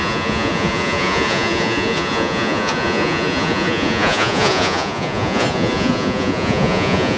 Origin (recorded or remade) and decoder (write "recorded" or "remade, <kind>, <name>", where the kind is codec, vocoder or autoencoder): remade, vocoder, Vocos